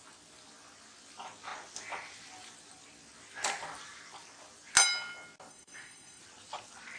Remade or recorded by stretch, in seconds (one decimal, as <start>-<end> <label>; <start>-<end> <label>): 0.0-5.5 recorded; 5.5-6.2 remade; 6.2-7.0 recorded